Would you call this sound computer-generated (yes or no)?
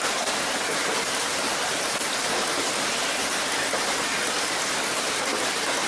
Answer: no